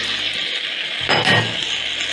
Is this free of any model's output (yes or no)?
yes